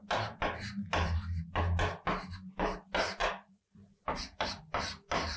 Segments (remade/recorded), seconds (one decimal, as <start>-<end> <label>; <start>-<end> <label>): 0.0-3.2 recorded; 3.2-4.6 remade; 4.6-5.4 recorded